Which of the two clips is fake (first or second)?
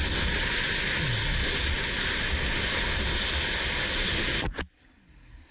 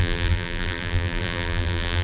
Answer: second